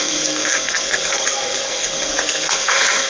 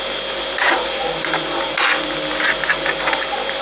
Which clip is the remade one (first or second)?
first